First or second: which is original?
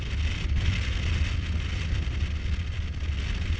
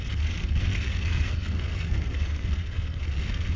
first